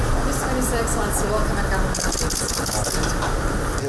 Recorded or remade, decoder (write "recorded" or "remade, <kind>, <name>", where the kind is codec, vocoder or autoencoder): recorded